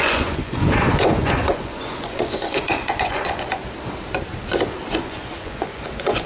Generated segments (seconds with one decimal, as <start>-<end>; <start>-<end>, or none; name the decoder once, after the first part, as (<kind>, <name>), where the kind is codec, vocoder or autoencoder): 0.0-3.6 (vocoder, Vocos); 4.9-6.3